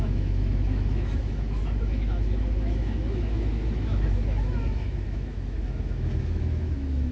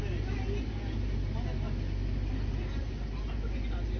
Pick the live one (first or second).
second